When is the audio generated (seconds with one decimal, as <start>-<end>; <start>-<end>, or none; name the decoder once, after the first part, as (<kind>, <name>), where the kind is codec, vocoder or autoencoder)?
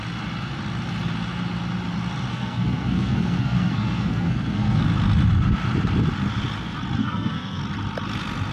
2.3-4.8 (codec, SNAC); 7.0-7.6